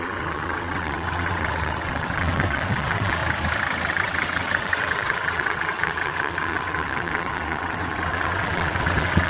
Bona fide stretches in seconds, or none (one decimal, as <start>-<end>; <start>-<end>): 3.2-3.9